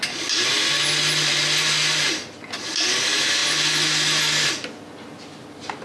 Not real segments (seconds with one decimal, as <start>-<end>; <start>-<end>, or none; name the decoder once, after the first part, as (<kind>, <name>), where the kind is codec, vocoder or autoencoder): none